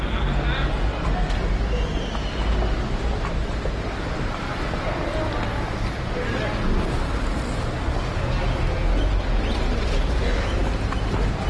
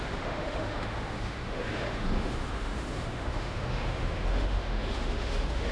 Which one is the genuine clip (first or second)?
first